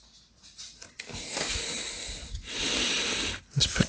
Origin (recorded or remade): recorded